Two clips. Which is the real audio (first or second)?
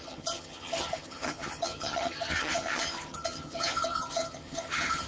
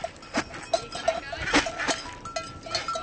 second